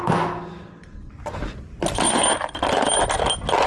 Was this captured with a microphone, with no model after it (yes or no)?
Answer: yes